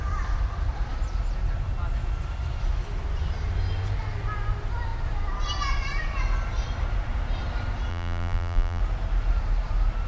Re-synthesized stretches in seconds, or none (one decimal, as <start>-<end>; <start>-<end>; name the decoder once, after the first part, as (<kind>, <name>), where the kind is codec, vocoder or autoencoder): 7.9-8.8 (vocoder, BigVGAN v2)